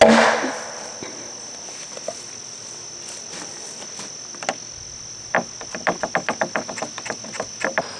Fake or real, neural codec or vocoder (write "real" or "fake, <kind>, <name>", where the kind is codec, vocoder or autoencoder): real